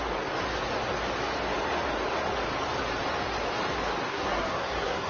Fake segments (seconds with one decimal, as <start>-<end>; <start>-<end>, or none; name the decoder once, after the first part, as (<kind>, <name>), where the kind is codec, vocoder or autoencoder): 4.1-5.1 (codec, SNAC)